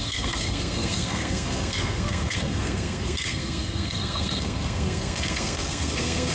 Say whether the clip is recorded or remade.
remade